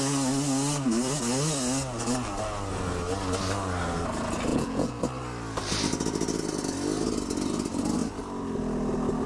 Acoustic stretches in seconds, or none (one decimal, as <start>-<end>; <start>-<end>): 0.0-4.5; 5.0-9.3